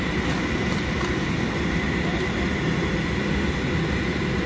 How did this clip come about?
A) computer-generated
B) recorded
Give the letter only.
B